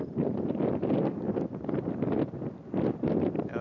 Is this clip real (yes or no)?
yes